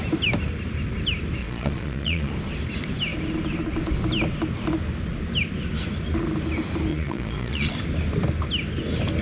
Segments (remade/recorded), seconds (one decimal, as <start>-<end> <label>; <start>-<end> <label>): 0.0-1.4 recorded; 1.4-2.3 remade; 2.3-6.9 recorded; 6.9-7.7 remade; 7.7-9.2 recorded